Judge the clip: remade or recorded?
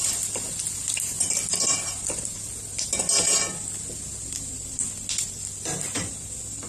recorded